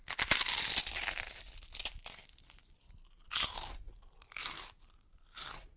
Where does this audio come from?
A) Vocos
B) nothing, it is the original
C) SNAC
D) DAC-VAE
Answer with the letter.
B